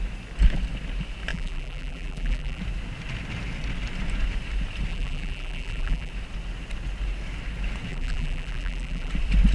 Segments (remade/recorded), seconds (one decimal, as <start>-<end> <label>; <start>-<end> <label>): 0.0-1.3 recorded; 1.3-2.6 remade; 2.6-4.9 recorded; 4.9-6.1 remade; 6.1-7.9 recorded; 7.9-9.1 remade; 9.1-9.5 recorded